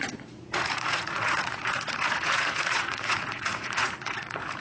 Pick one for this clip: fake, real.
fake